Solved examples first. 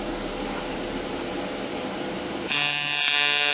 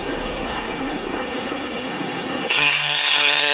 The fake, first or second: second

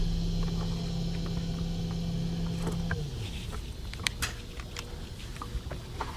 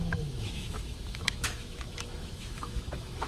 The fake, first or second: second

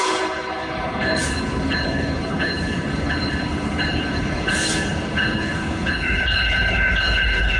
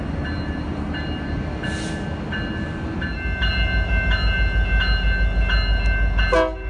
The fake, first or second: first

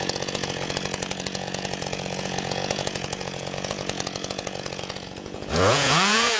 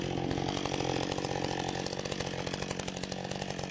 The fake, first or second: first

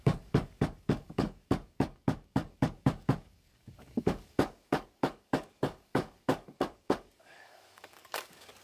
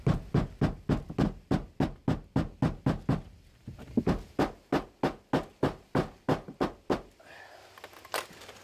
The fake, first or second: first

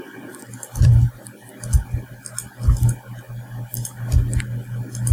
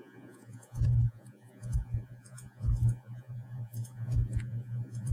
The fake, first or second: second